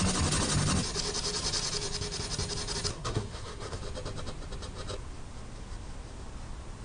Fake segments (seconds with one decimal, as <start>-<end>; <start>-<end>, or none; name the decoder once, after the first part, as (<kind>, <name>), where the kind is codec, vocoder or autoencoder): 2.9-3.8 (codec, SNAC)